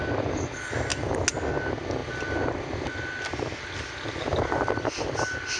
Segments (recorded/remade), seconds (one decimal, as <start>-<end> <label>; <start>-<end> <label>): 0.0-5.6 recorded